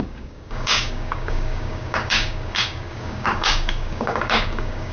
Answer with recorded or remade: remade